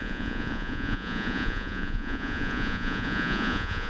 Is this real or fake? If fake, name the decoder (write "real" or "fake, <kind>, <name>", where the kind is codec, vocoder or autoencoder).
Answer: fake, vocoder, Vocos